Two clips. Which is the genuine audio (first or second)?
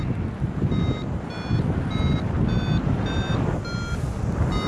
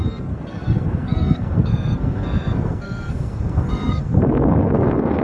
first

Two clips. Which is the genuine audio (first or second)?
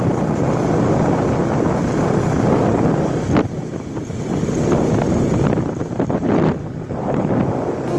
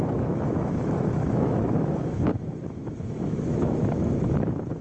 first